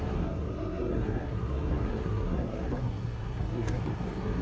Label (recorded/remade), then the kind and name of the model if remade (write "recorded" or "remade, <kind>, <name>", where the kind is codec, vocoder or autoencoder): remade, codec, SNAC